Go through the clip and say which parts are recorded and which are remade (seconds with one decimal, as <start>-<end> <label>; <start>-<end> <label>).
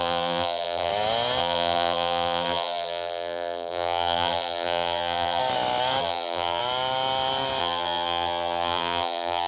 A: 0.0-0.9 remade; 0.9-1.4 recorded; 1.4-5.4 remade; 5.4-6.0 recorded; 6.0-6.6 remade; 6.6-7.6 recorded; 7.6-9.5 remade